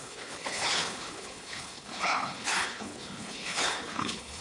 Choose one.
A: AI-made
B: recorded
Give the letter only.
A